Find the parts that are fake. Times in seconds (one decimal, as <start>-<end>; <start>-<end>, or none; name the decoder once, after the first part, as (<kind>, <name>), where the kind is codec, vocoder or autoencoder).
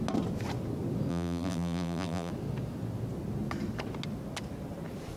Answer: 1.1-2.3 (vocoder, BigVGAN v2)